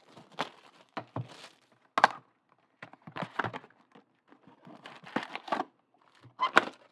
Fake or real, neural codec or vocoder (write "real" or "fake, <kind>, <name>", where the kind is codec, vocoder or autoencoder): real